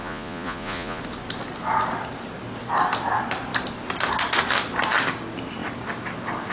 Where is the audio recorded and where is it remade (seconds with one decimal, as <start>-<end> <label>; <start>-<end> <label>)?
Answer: 0.0-1.0 remade; 1.0-6.5 recorded